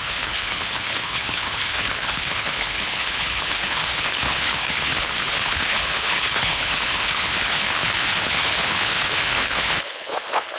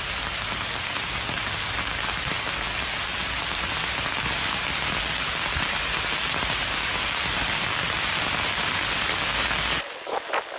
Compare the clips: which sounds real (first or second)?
second